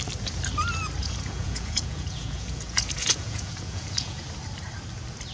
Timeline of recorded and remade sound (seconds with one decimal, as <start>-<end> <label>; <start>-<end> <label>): 0.0-1.0 recorded; 1.0-4.2 remade; 4.2-5.3 recorded